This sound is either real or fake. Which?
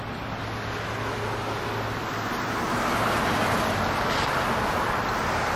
real